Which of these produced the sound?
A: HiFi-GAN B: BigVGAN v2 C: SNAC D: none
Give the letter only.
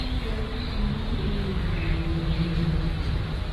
D